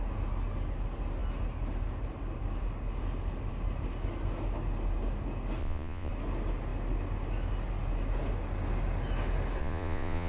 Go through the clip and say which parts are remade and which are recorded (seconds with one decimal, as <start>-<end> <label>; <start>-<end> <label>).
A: 0.0-5.6 recorded; 5.6-6.1 remade; 6.1-9.6 recorded; 9.6-10.3 remade